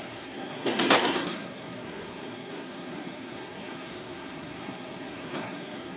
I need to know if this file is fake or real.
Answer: fake